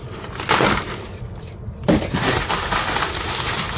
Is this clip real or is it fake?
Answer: real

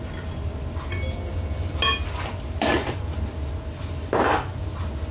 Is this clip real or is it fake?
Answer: real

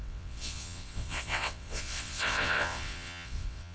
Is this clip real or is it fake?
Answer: fake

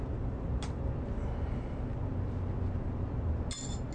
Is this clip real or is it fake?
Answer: real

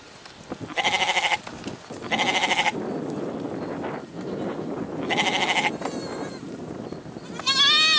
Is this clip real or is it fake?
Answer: real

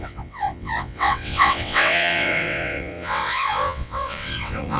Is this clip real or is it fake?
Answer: fake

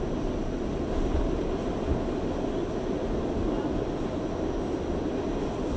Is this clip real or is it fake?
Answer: real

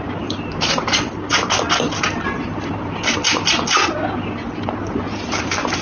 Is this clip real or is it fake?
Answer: real